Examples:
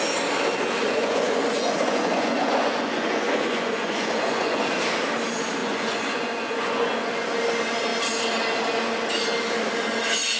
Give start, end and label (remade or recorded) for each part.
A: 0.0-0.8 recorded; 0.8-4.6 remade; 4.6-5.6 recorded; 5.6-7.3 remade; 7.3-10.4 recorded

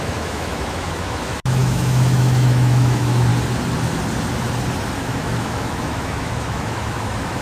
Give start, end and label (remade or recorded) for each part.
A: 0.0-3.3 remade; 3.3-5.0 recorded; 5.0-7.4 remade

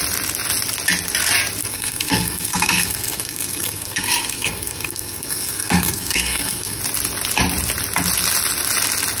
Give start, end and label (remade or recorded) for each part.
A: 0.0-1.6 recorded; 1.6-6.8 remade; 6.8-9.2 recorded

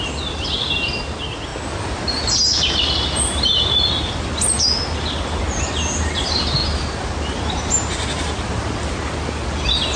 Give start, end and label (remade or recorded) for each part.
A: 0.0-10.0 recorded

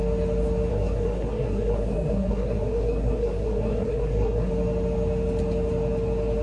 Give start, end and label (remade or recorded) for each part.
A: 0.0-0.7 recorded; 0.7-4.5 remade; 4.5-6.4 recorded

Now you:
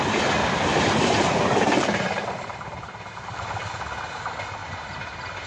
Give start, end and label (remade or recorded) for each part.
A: 0.0-0.4 recorded; 0.4-3.7 remade; 3.7-5.5 recorded